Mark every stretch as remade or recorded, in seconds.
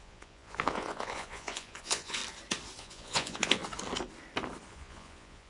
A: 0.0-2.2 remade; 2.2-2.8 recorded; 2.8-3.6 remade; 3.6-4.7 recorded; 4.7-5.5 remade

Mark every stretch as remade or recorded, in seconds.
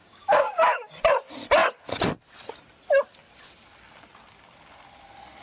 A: 0.0-0.9 remade; 0.9-5.4 recorded